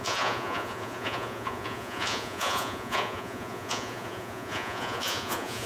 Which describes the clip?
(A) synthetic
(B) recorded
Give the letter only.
A